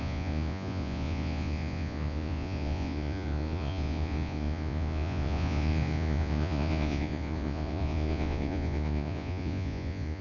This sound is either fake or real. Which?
fake